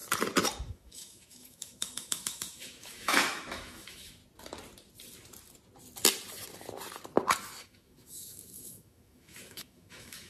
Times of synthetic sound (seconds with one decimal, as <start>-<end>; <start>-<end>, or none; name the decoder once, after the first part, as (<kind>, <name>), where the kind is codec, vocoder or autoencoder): 0.6-4.2 (autoencoder, DAC-VAE); 7.6-10.3